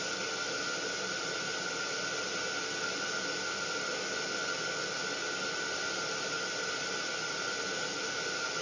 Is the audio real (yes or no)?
yes